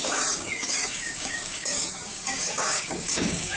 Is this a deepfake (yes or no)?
yes